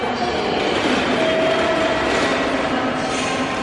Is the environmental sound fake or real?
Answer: real